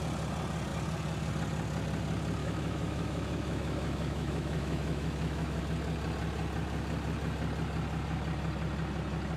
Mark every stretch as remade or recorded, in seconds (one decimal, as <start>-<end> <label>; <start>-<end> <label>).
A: 0.0-2.4 recorded; 2.4-5.6 remade; 5.6-9.4 recorded